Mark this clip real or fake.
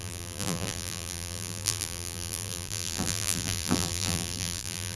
fake